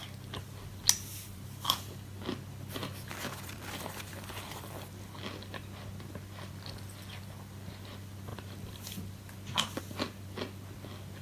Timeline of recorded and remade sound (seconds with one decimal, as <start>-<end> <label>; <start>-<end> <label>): 0.0-1.1 recorded; 1.1-1.8 remade; 1.8-2.8 recorded; 2.8-4.7 remade; 4.7-11.2 recorded